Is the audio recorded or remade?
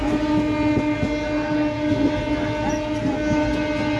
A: recorded